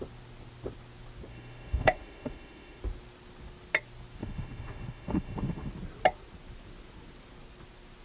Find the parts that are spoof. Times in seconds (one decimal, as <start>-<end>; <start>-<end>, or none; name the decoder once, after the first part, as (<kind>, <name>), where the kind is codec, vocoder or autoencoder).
1.3-2.8 (autoencoder, DAC-VAE); 4.2-5.7